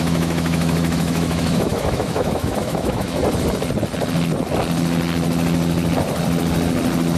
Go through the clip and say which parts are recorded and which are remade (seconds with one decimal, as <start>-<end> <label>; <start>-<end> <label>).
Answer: 0.0-3.2 remade; 3.2-7.2 recorded